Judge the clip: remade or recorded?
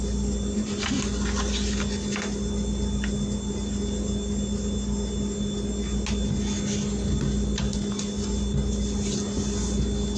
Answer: recorded